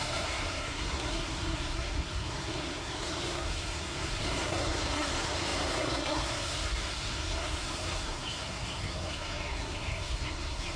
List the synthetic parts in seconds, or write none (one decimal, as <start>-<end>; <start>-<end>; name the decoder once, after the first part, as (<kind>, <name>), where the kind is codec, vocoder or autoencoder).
0.0-10.8 (codec, SNAC)